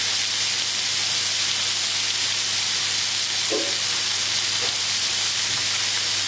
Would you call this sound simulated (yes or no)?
no